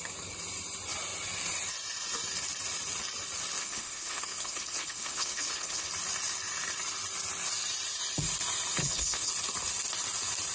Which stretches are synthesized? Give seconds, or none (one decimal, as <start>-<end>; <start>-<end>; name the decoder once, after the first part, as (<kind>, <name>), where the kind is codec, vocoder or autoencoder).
3.6-5.9 (codec, HILCodec); 8.8-9.3